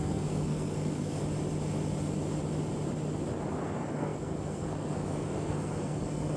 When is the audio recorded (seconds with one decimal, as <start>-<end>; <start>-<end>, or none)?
1.2-3.5